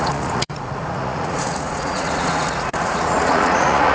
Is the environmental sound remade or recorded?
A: remade